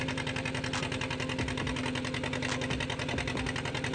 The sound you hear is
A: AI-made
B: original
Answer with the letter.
B